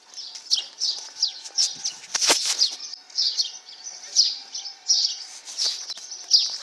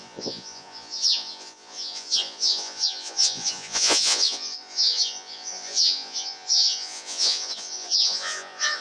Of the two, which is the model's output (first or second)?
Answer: second